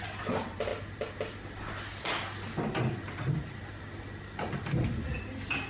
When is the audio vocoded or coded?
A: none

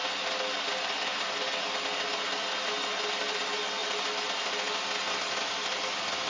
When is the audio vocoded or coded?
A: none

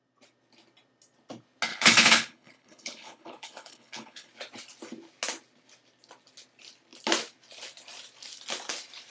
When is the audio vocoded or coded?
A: 1.7-4.3 (codec, HILCodec)